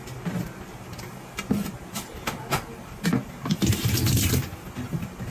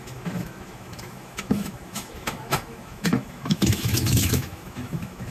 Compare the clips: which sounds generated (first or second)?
second